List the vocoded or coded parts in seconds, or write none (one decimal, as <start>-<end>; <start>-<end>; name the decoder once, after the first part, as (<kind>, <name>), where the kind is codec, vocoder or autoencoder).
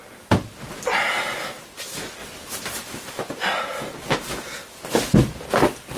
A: 2.2-3.2 (vocoder, BigVGAN v2)